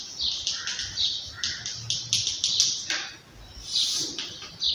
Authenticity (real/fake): real